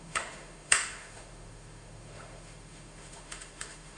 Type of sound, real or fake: fake